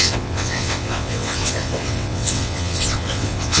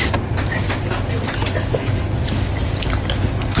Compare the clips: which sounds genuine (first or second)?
second